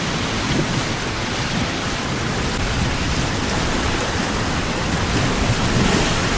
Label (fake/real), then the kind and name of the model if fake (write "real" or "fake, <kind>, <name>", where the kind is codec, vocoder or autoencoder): real